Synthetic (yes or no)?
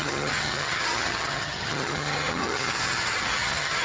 yes